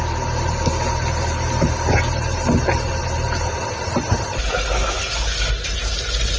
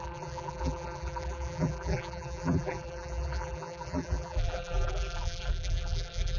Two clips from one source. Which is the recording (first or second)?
first